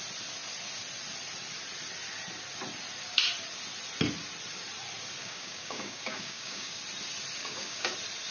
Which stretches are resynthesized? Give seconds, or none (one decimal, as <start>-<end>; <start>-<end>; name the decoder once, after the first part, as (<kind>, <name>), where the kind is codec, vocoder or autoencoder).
5.2-6.8 (codec, DAC); 7.4-7.9